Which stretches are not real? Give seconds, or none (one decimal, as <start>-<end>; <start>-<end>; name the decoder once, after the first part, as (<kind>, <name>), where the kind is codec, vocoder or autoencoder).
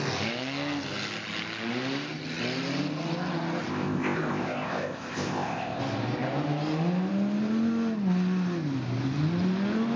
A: 3.7-5.8 (codec, ZipCodec)